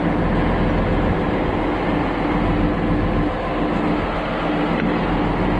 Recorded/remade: recorded